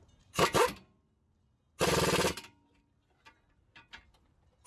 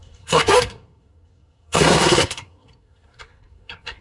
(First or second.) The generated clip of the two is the second